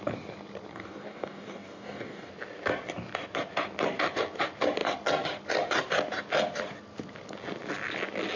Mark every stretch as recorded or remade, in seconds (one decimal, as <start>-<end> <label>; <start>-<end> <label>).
0.0-0.7 recorded; 0.7-2.3 remade; 2.3-8.4 recorded